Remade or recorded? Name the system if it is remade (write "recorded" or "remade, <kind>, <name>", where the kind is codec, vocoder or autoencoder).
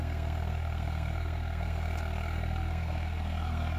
remade, codec, SNAC